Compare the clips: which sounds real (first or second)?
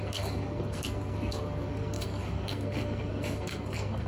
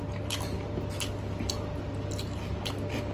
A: second